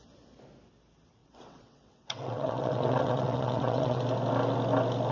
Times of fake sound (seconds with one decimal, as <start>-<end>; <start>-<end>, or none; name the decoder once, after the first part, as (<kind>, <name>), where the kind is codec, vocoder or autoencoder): 1.2-4.0 (vocoder, WaveNeXt)